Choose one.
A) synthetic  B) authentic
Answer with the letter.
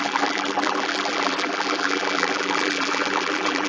A